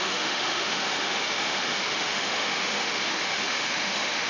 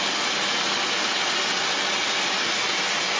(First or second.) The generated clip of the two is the first